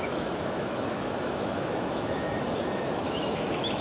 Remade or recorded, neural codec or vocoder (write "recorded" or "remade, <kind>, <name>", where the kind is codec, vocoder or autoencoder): remade, autoencoder, DAC-VAE